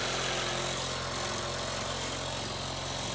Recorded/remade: recorded